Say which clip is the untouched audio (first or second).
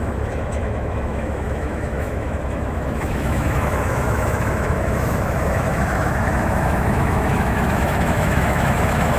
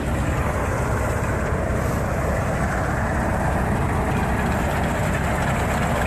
second